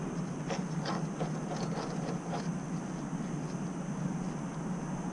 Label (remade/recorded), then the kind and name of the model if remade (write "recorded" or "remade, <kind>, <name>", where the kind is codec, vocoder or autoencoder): recorded